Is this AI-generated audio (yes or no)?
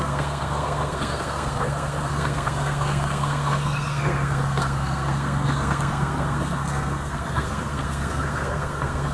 yes